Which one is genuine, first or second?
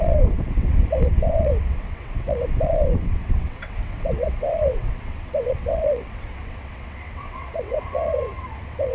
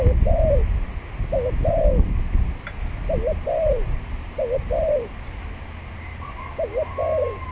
second